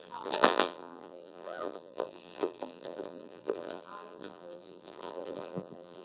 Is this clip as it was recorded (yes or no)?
no